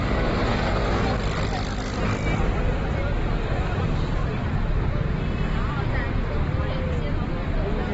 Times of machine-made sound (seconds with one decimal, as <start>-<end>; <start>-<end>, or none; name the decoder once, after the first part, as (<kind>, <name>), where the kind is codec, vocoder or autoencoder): 4.2-5.4 (vocoder, BigVGAN v2)